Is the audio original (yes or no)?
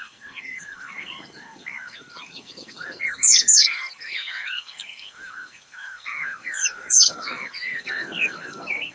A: no